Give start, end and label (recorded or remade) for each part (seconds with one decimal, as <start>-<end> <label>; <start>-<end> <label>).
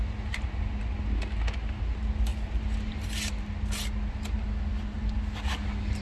0.0-6.0 recorded